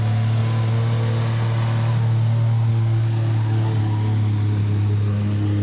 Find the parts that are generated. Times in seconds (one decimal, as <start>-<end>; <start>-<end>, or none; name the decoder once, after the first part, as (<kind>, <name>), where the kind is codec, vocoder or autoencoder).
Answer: 2.7-3.8 (codec, DAC)